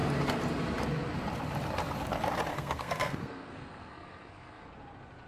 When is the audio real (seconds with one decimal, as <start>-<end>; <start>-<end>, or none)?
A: 0.0-2.5; 4.7-5.3

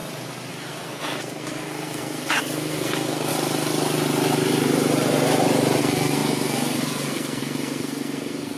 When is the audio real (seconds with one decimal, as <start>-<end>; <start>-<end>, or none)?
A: 0.0-0.5; 3.3-5.8

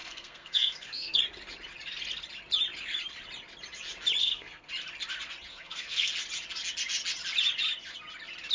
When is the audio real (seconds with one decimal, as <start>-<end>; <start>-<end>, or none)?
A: 1.2-4.2; 4.7-5.5; 6.1-8.5

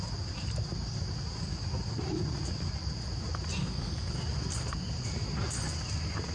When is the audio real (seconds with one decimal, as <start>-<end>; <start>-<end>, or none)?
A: 0.0-3.6; 4.1-6.3

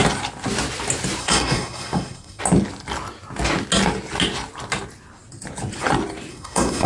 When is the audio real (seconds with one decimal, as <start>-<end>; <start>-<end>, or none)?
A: 0.0-1.2; 2.4-6.3

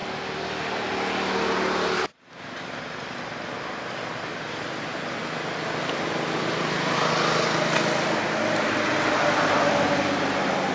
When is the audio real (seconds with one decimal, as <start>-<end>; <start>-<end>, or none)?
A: 0.0-10.7